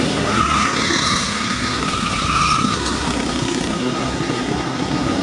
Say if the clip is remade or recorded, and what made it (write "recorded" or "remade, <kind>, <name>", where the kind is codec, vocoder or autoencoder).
remade, codec, SNAC